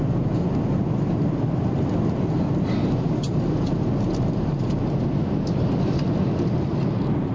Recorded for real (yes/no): yes